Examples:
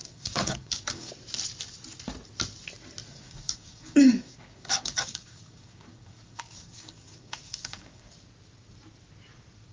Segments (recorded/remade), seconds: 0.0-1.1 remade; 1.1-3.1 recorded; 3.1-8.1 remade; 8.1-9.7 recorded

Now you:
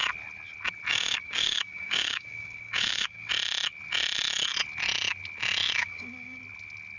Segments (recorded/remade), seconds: 0.0-0.9 recorded; 0.9-3.3 remade; 3.3-5.8 recorded; 5.8-6.4 remade; 6.4-7.0 recorded

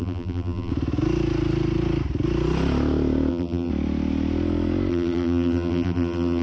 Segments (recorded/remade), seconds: 0.0-0.7 remade; 0.7-3.3 recorded; 3.3-3.7 remade; 3.7-4.9 recorded; 4.9-6.4 remade

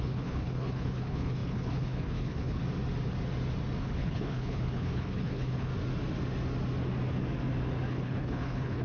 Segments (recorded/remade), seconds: 0.0-2.6 remade; 2.6-3.8 recorded; 3.8-5.7 remade; 5.7-7.9 recorded; 7.9-8.8 remade

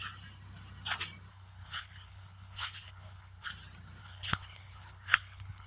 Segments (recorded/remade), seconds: 0.0-1.3 recorded; 1.3-3.5 remade; 3.5-4.0 recorded; 4.0-5.7 remade

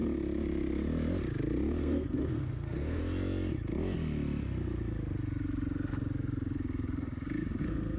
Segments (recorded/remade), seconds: 0.0-1.8 recorded; 1.8-3.0 remade; 3.0-7.6 recorded; 7.6-8.0 remade